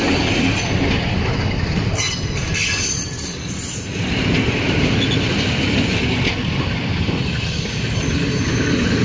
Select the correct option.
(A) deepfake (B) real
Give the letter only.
B